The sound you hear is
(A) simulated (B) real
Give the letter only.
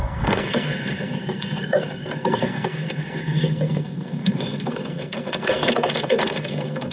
A